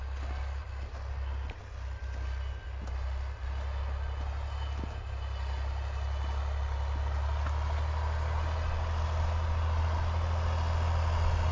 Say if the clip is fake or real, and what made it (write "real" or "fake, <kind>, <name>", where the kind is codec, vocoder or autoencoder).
real